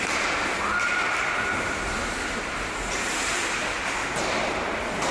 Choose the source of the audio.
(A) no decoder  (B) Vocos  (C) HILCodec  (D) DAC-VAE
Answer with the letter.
A